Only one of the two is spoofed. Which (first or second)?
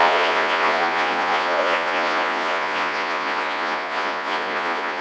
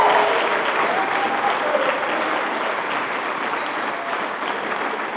first